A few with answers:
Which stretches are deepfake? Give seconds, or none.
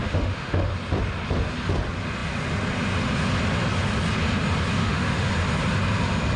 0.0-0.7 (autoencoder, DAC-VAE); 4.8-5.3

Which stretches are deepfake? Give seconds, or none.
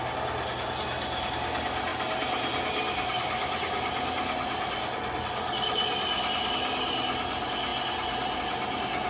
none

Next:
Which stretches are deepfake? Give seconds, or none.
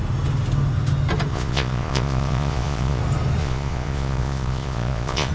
1.3-3.0 (vocoder, Vocos); 3.4-5.3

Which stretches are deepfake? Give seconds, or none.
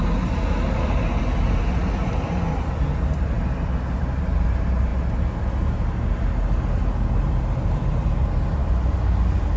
none